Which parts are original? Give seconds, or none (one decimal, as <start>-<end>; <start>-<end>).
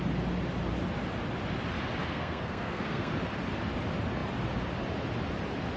0.0-2.0; 3.1-5.8